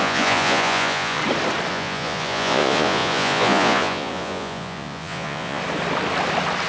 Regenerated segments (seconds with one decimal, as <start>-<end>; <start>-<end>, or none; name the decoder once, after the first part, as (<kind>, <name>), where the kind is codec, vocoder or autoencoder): 0.0-1.2 (vocoder, Vocos); 1.7-5.6